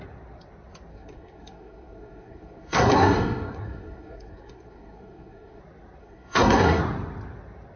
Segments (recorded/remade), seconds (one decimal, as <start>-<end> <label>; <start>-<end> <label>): 0.0-0.9 recorded; 0.9-5.6 remade; 5.6-6.0 recorded; 6.0-6.8 remade; 6.8-7.8 recorded